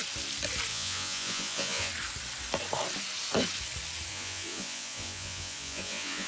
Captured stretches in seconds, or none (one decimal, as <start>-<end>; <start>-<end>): 0.0-0.7; 1.9-4.1